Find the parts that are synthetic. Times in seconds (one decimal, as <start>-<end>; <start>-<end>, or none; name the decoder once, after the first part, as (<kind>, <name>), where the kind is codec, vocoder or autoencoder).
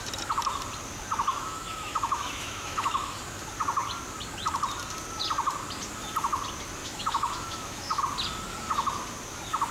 1.3-3.2 (autoencoder, DAC-VAE); 6.8-8.0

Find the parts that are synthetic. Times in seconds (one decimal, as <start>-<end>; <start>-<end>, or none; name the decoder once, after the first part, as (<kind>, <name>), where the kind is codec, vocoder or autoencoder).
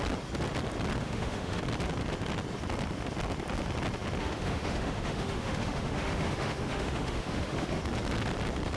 1.0-1.6 (autoencoder, DAC-VAE); 4.2-7.8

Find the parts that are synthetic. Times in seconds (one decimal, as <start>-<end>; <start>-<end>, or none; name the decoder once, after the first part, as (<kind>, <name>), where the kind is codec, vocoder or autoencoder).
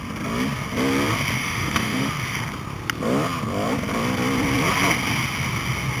1.4-2.1 (autoencoder, DAC-VAE)